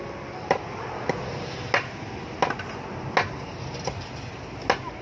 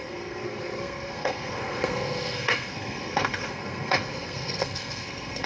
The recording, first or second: first